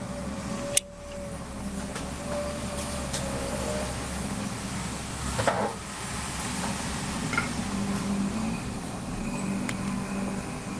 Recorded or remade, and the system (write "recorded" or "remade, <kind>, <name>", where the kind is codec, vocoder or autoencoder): recorded